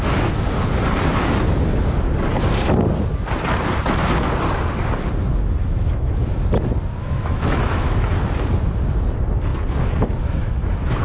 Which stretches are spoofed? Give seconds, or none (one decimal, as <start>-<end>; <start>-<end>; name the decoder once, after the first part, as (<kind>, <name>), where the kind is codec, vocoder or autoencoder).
5.6-6.2 (autoencoder, DAC-VAE); 7.0-8.1